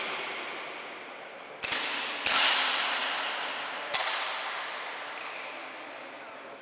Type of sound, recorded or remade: recorded